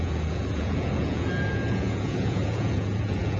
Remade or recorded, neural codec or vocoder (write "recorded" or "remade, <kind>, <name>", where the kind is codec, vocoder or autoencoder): remade, vocoder, Vocos